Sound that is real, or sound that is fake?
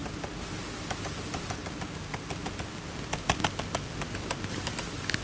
real